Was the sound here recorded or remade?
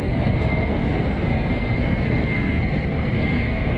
remade